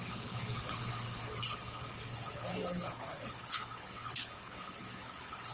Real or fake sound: fake